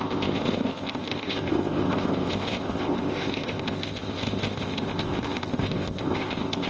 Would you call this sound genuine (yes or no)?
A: no